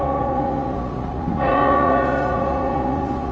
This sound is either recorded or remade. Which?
remade